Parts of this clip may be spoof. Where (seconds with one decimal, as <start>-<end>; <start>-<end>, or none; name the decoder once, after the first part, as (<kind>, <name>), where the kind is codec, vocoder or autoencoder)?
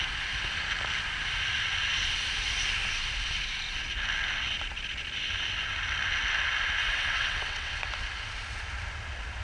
6.8-7.7 (vocoder, WaveNeXt)